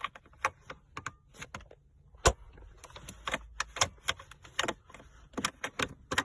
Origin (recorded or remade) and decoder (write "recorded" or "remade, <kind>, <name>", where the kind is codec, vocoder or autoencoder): recorded